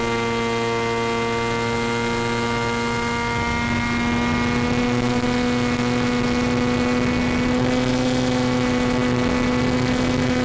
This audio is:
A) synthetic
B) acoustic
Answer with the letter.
B